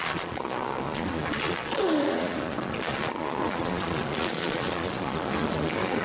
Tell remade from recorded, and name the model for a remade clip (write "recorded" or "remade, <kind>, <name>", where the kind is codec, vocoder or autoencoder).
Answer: remade, vocoder, Vocos